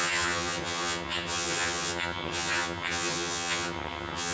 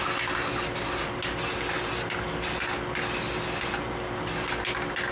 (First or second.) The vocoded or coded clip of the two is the first